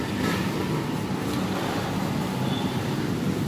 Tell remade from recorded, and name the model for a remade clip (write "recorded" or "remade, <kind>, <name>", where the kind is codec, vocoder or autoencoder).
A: recorded